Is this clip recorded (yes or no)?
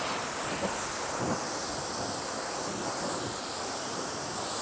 yes